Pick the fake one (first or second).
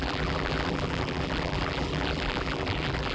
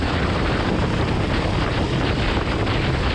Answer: first